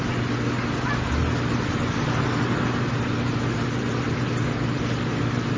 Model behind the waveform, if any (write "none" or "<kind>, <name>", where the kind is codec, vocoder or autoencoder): none